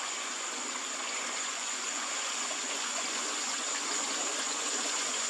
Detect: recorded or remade remade